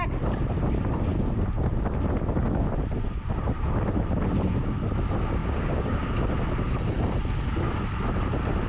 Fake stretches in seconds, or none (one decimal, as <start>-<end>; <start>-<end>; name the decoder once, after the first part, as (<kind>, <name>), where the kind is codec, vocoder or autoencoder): 5.4-6.1 (codec, DAC)